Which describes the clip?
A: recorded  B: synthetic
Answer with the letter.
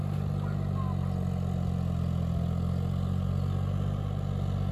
A